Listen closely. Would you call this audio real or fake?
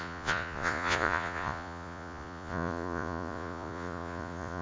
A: fake